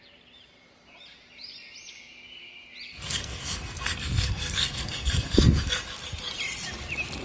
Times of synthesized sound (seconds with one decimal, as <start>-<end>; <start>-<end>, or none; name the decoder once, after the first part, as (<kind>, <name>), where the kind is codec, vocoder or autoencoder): 2.9-5.8 (codec, SNAC)